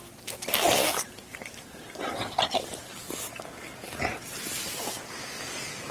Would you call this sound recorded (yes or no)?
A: yes